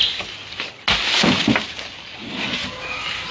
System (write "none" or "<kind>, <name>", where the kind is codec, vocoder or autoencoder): none